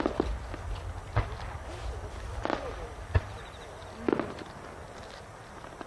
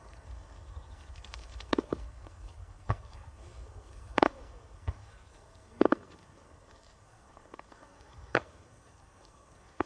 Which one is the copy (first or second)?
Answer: second